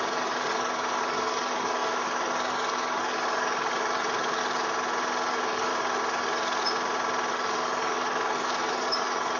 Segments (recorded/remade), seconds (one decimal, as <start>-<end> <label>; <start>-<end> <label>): 0.0-4.4 remade; 4.4-5.3 recorded; 5.3-5.7 remade; 5.7-7.3 recorded; 7.3-9.4 remade